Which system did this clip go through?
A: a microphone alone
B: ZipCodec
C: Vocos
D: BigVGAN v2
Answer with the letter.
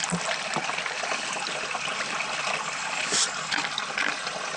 A